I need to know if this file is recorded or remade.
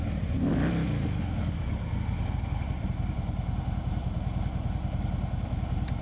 recorded